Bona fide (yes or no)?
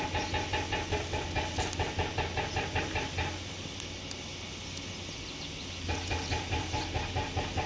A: yes